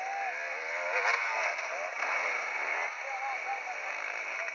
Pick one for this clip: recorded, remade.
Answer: recorded